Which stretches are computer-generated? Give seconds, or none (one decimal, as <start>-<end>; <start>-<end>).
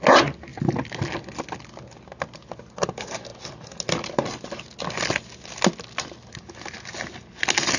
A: none